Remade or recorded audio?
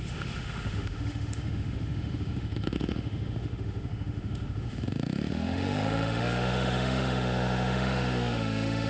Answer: remade